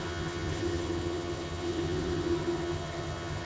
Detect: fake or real fake